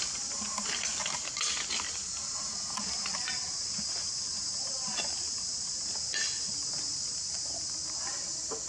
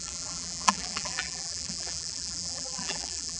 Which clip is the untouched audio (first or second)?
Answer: first